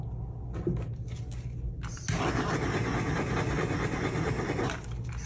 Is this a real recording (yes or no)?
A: yes